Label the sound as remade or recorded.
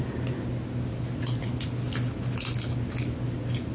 recorded